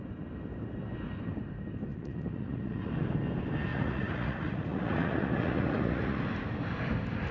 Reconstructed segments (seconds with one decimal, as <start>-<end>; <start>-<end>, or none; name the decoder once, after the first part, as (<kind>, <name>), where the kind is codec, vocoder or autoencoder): 1.9-2.9 (vocoder, Vocos); 3.7-6.2